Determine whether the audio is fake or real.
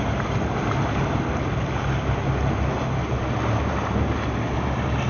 real